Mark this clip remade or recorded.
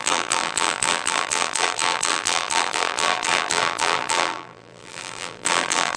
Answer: remade